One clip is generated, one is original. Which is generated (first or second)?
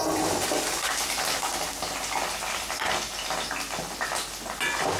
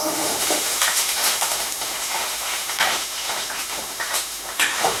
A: second